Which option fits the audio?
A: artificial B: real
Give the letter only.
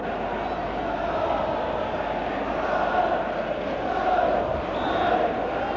B